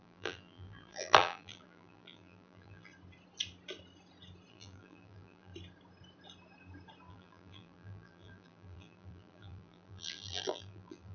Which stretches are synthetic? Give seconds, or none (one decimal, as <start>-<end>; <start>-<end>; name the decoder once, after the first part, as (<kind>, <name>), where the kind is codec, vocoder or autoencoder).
0.0-2.9 (vocoder, BigVGAN v2); 4.5-5.5; 7.1-11.1